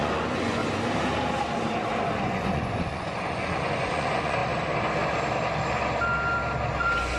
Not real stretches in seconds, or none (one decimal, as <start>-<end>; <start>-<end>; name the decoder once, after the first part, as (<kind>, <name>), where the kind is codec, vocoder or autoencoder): 0.0-0.6 (vocoder, Vocos); 2.1-4.4; 6.8-7.2